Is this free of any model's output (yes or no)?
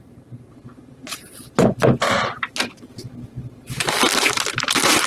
no